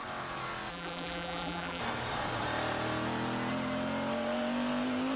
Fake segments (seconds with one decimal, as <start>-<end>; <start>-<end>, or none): 0.7-1.8